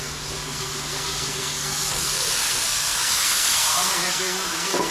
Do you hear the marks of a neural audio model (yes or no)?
yes